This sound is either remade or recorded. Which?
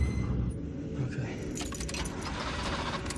recorded